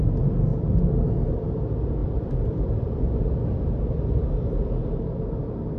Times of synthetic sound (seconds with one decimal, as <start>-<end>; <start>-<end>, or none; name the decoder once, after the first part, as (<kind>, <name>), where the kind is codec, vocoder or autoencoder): 0.5-1.1 (vocoder, BigVGAN v2); 2.0-4.0